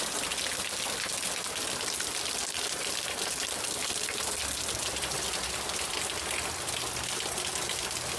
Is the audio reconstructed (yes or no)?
no